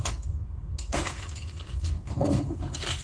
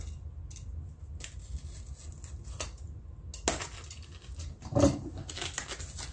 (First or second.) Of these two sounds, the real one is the second